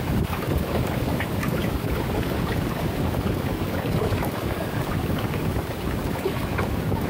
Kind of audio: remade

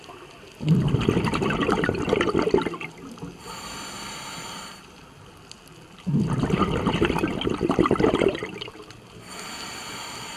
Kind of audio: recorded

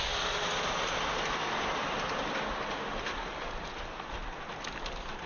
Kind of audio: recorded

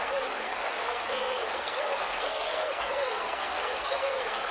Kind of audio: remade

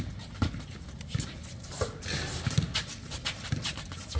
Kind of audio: recorded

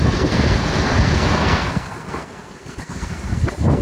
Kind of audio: remade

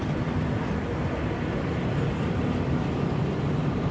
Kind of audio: recorded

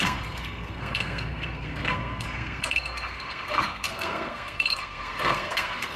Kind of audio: remade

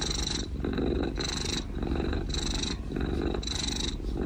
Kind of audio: recorded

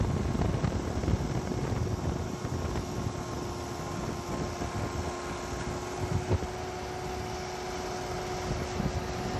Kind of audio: recorded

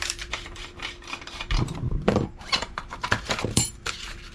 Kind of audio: remade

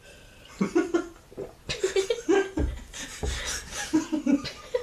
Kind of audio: recorded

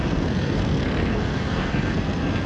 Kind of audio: remade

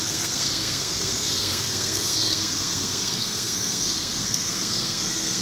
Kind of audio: remade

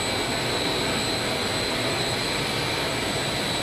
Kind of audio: recorded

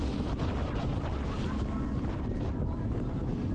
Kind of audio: recorded